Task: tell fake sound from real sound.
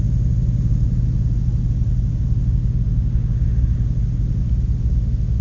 real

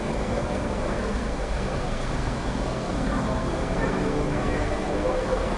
fake